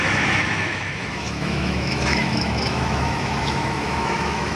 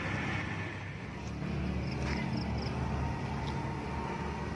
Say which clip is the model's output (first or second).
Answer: first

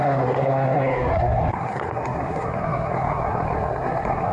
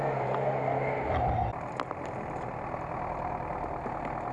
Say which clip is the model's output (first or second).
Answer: first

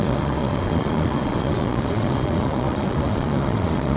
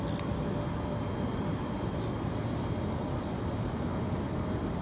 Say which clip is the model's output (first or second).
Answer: first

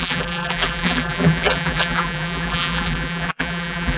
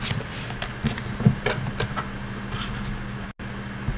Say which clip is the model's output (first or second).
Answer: first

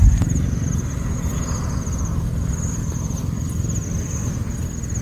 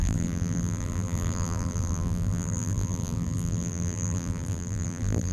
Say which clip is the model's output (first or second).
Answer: second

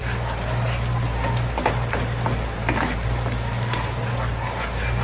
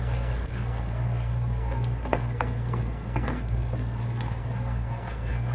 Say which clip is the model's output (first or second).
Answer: second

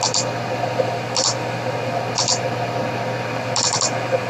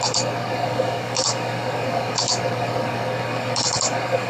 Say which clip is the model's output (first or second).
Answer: second